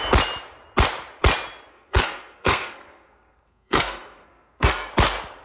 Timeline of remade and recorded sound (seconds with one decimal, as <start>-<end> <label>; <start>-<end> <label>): 0.0-1.7 recorded; 1.7-4.9 remade; 4.9-5.4 recorded